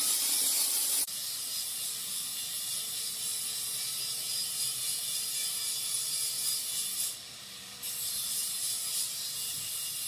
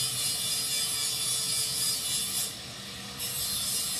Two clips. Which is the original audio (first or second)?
second